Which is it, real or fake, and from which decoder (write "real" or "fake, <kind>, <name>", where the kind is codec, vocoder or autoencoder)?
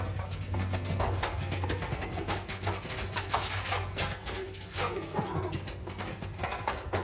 fake, codec, SNAC